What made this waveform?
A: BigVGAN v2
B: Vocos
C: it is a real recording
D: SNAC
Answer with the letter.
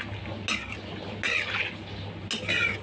C